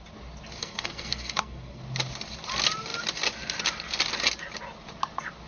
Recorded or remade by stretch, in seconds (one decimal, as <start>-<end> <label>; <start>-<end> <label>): 0.0-0.6 recorded; 0.6-1.8 remade; 1.8-5.5 recorded